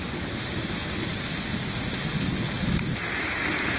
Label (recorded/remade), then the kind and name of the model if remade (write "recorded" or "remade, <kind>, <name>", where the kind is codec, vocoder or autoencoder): recorded